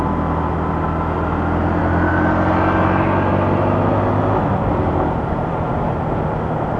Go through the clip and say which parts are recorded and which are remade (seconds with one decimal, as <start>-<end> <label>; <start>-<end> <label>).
0.0-6.8 recorded